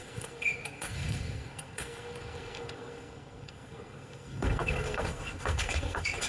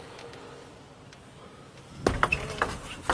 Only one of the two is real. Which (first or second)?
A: second